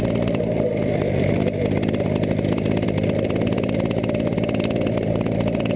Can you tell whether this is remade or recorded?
remade